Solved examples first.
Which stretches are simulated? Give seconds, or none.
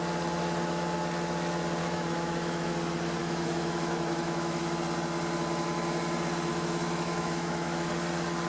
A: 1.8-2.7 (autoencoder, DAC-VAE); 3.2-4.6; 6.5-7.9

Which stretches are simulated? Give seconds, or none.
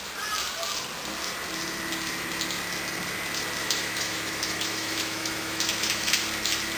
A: 3.6-6.1 (autoencoder, DAC-VAE)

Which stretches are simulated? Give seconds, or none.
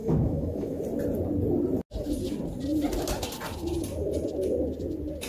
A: 0.0-0.8 (autoencoder, DAC-VAE)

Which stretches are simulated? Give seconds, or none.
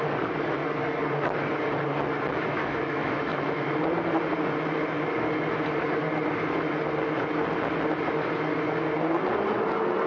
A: 2.5-3.8 (autoencoder, DAC-VAE)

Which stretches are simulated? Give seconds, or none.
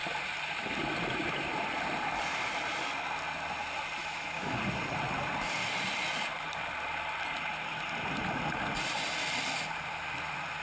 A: 4.0-4.6 (autoencoder, DAC-VAE)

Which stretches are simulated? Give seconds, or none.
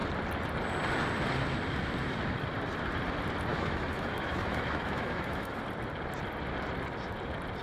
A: 3.5-5.6 (autoencoder, DAC-VAE)